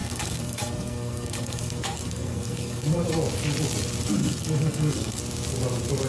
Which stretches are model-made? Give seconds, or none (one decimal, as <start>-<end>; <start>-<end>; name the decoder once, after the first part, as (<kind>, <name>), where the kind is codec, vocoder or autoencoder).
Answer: 0.0-3.0 (codec, SNAC); 4.2-5.2